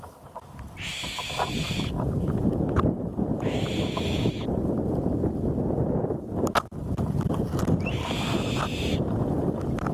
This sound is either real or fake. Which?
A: real